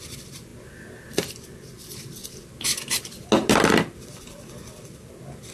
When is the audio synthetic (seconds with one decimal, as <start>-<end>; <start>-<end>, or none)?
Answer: 0.0-0.5; 1.3-2.2; 3.5-5.5